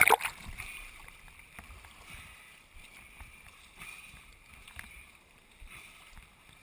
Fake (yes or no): no